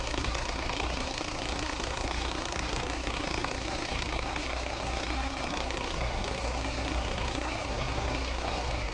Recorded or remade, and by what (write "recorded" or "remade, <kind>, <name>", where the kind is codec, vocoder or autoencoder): remade, codec, SNAC